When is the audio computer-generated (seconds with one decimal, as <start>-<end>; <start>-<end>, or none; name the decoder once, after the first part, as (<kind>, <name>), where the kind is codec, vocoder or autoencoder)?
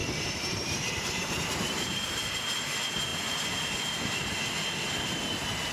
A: 0.0-2.2 (vocoder, BigVGAN v2)